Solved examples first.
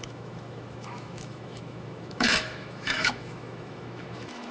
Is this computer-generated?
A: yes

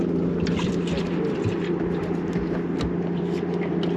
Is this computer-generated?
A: no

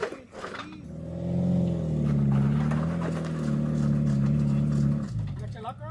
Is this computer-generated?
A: no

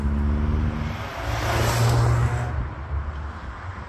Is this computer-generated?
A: no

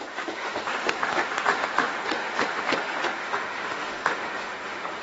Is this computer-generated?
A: yes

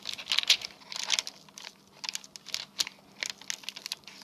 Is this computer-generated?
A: no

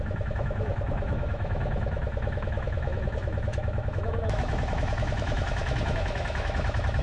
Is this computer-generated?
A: yes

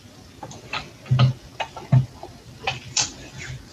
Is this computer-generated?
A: no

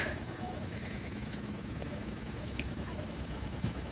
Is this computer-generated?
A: yes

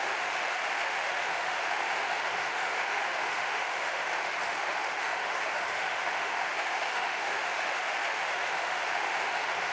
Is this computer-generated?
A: yes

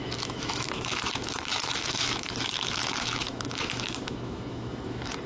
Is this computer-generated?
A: yes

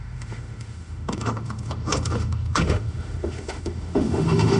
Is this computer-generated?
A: yes